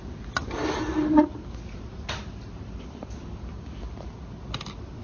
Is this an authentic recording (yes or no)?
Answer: yes